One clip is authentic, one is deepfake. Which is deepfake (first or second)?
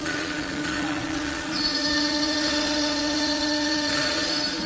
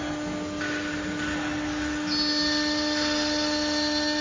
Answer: first